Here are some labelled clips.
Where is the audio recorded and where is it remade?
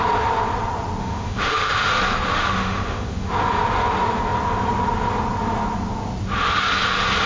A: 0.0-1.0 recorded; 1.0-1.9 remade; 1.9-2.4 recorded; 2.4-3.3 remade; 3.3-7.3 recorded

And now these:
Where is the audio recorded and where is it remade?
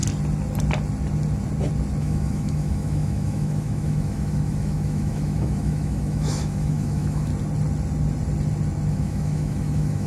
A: 0.0-2.0 recorded; 2.0-7.3 remade; 7.3-8.9 recorded; 8.9-10.1 remade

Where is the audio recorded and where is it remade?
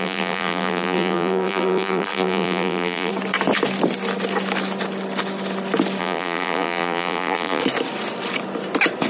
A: 0.0-3.1 remade; 3.1-6.0 recorded; 6.0-7.6 remade; 7.6-9.1 recorded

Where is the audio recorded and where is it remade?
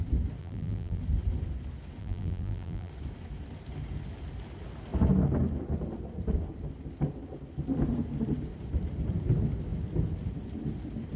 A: 0.0-0.4 recorded; 0.4-1.0 remade; 1.0-2.0 recorded; 2.0-2.9 remade; 2.9-11.2 recorded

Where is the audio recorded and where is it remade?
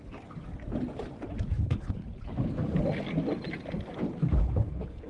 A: 0.0-1.6 recorded; 1.6-2.0 remade; 2.0-4.4 recorded; 4.4-5.1 remade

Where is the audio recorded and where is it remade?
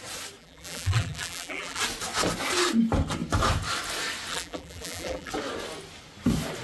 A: 0.0-0.4 recorded; 0.4-1.8 remade; 1.8-4.3 recorded; 4.3-5.3 remade; 5.3-6.6 recorded